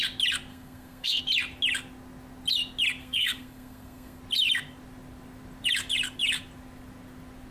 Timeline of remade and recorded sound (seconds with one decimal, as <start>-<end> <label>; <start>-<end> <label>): 0.0-0.5 recorded; 0.5-1.2 remade; 1.2-3.0 recorded; 3.0-4.2 remade; 4.2-7.5 recorded